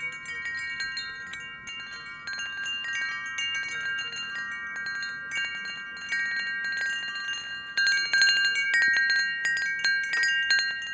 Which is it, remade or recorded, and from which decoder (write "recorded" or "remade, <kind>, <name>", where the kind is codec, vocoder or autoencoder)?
recorded